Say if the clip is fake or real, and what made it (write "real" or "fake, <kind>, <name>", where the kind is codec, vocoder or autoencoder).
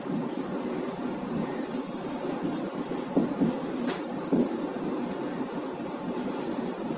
real